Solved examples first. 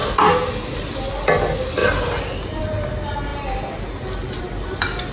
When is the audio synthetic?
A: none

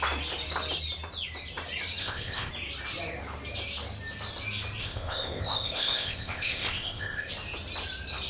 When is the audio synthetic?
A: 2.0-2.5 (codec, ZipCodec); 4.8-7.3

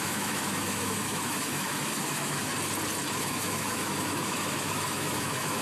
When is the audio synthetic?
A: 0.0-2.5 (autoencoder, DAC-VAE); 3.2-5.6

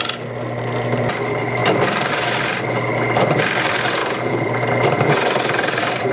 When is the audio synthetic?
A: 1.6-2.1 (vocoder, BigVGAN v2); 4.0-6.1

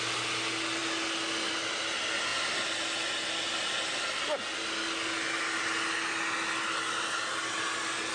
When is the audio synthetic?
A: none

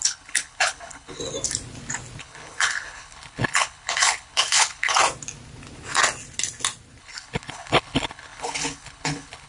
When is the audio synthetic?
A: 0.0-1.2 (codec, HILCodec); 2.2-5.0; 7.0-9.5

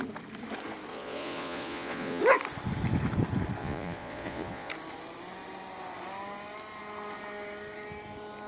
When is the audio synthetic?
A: 0.9-2.2 (vocoder, Vocos); 3.6-4.7

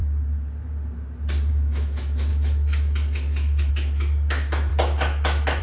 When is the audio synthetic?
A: 1.5-5.6 (autoencoder, DAC-VAE)